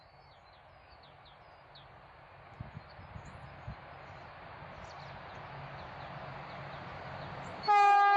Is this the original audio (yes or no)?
yes